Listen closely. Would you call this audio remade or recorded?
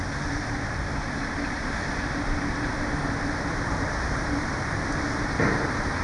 remade